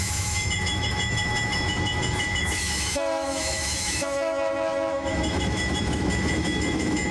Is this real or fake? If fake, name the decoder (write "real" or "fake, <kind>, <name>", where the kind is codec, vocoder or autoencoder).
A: fake, autoencoder, DAC-VAE